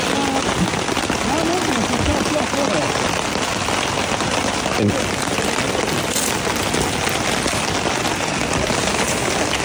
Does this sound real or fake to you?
real